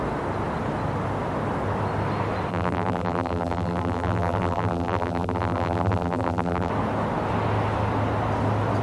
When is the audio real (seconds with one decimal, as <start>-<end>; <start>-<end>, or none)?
0.0-2.5; 6.7-8.8